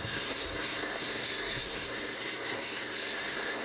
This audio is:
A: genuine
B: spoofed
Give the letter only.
B